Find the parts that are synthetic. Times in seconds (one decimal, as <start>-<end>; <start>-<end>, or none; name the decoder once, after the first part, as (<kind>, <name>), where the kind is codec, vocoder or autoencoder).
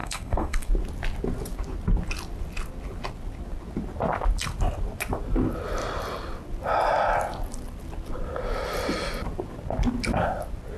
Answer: 0.0-0.7 (codec, SNAC)